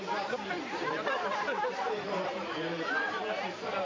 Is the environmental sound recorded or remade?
remade